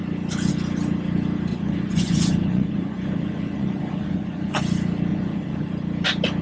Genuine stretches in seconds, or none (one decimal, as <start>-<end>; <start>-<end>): 0.0-1.5; 4.6-5.1; 5.7-6.4